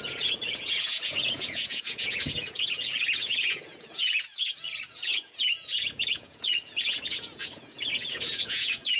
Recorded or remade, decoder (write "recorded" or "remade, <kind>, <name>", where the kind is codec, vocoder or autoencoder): remade, vocoder, Vocos